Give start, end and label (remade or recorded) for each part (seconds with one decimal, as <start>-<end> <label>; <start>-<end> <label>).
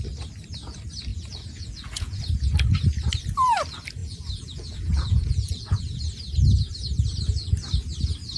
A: 0.0-1.1 recorded; 1.1-2.2 remade; 2.2-4.0 recorded; 4.0-6.0 remade; 6.0-8.4 recorded